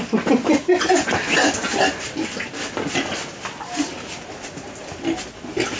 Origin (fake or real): real